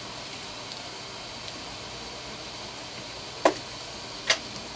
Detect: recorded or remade recorded